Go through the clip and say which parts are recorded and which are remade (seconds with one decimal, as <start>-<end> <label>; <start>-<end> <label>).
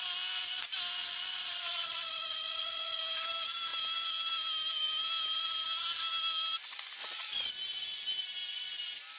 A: 0.0-1.0 recorded; 1.0-3.0 remade; 3.0-7.0 recorded; 7.0-7.5 remade; 7.5-9.2 recorded